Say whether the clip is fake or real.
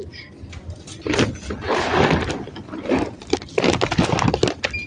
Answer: real